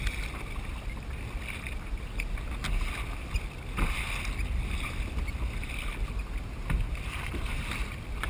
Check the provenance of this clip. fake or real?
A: real